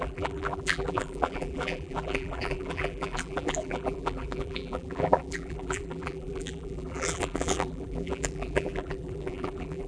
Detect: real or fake fake